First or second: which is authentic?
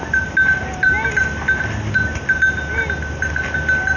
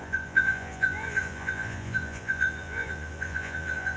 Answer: first